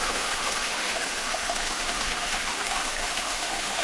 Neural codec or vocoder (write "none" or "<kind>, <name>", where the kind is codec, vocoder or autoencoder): autoencoder, DAC-VAE